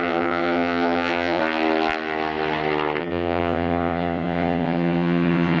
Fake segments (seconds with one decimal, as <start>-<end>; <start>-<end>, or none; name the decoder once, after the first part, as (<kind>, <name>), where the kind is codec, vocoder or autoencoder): 0.0-1.4 (vocoder, HiFi-GAN); 3.0-5.6